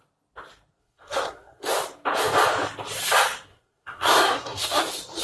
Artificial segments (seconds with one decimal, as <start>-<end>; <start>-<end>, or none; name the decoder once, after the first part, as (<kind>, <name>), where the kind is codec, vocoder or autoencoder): 0.8-1.7 (codec, SNAC); 3.5-4.8